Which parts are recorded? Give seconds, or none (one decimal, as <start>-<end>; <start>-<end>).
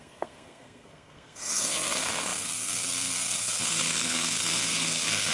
none